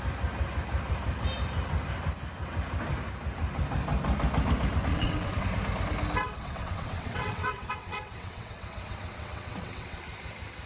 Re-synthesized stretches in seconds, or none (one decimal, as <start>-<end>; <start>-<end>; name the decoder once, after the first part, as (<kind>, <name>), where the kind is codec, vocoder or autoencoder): 4.9-5.4 (vocoder, WaveNeXt); 6.2-10.0